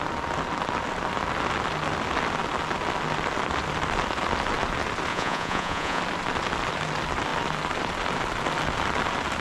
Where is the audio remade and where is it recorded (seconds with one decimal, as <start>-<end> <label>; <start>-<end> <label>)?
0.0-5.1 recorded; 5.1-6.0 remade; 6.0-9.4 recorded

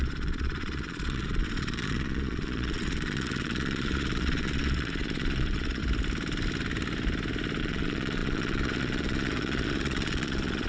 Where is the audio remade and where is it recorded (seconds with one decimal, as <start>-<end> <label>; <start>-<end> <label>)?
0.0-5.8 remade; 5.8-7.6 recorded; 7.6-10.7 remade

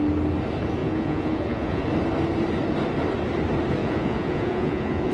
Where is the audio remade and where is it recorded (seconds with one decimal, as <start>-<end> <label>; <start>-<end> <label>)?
0.0-0.8 recorded; 0.8-1.8 remade; 1.8-3.8 recorded; 3.8-5.1 remade

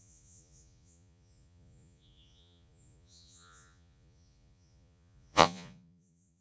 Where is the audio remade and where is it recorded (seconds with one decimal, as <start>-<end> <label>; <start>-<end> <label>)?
0.0-6.4 remade

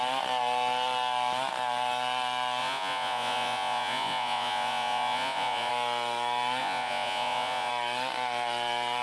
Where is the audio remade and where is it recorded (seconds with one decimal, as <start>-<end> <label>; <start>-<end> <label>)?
0.0-2.6 recorded; 2.6-5.7 remade; 5.7-6.6 recorded; 6.6-7.7 remade; 7.7-9.0 recorded